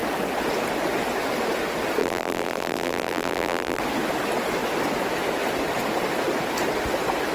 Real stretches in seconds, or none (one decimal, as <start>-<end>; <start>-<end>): 0.0-2.0; 3.8-7.3